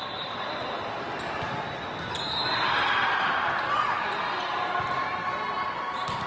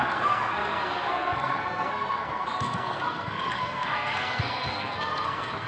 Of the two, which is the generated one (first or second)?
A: second